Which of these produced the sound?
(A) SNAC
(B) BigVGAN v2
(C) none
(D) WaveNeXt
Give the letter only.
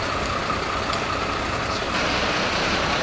C